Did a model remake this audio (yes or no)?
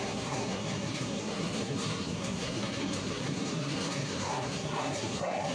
yes